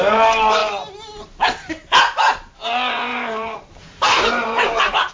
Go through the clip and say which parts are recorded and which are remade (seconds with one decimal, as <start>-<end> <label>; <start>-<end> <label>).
0.0-3.1 recorded; 3.1-5.1 remade